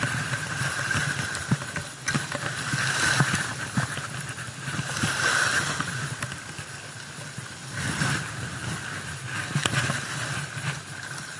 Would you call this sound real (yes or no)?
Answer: yes